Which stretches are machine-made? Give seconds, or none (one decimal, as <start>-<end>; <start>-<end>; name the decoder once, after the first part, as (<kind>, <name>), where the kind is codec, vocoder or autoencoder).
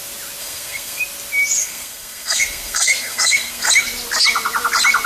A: 0.4-1.0 (codec, SNAC); 1.6-3.7